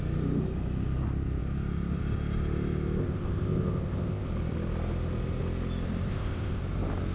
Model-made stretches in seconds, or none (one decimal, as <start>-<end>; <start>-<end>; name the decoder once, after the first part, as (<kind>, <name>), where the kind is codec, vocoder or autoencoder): 3.0-4.3 (codec, ZipCodec); 6.1-6.6